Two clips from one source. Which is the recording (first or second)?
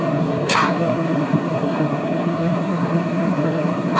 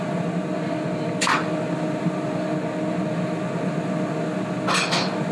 second